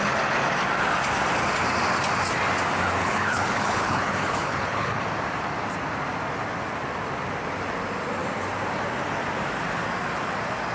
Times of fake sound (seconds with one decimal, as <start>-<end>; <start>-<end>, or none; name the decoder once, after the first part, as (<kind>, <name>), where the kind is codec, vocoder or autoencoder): 3.0-5.0 (codec, HILCodec)